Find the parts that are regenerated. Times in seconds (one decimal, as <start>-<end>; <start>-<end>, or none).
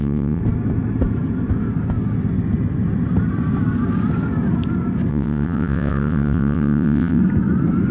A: 0.0-0.4; 5.1-7.2